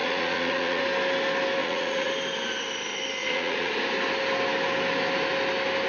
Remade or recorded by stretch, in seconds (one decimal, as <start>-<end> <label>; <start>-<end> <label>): 0.0-0.8 remade; 0.8-1.6 recorded; 1.6-2.1 remade; 2.1-3.2 recorded; 3.2-3.7 remade; 3.7-5.9 recorded